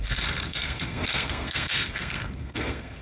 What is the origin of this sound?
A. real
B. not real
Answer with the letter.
B